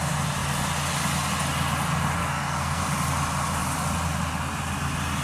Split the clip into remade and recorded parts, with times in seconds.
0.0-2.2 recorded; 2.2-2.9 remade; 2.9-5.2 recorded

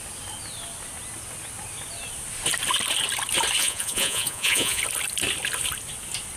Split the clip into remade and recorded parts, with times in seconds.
0.0-3.6 recorded; 3.6-4.8 remade; 4.8-6.4 recorded

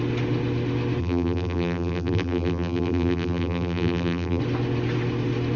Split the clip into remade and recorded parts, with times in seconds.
0.0-1.0 recorded; 1.0-4.4 remade; 4.4-5.6 recorded

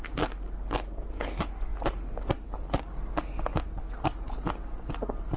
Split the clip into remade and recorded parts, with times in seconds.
0.0-5.4 recorded

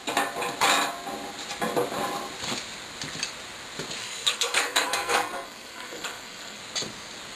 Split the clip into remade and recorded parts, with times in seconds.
0.0-4.0 recorded; 4.0-6.6 remade; 6.6-7.4 recorded

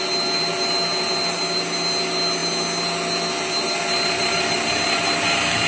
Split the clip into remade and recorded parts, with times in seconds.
0.0-5.7 recorded

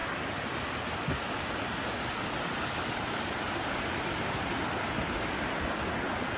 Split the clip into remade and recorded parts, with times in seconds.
0.0-6.4 recorded

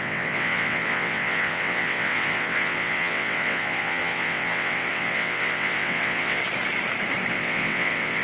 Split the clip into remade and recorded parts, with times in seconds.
0.0-6.4 remade; 6.4-7.3 recorded; 7.3-8.2 remade